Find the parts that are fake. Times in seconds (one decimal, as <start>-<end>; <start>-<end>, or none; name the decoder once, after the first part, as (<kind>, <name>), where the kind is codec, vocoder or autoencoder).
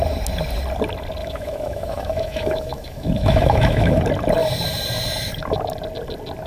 1.2-4.0 (autoencoder, DAC-VAE)